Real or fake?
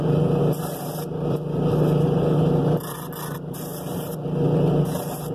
real